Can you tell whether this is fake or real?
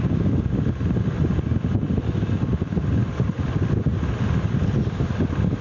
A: real